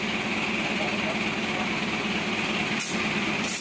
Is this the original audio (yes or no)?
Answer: yes